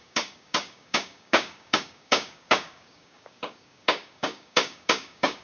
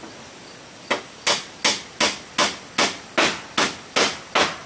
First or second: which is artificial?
first